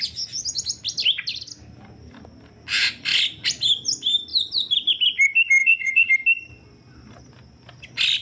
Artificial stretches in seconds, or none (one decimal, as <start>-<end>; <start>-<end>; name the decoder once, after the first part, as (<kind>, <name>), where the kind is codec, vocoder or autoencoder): 5.6-6.1 (vocoder, HiFi-GAN)